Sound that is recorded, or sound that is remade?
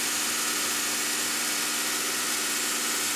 recorded